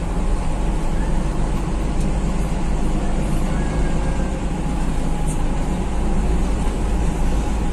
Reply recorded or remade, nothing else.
recorded